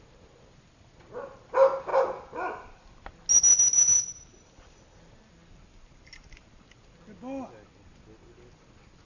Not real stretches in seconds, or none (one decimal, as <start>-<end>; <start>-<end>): none

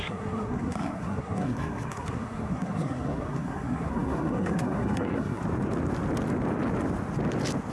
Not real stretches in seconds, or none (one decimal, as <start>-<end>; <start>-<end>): 0.0-5.4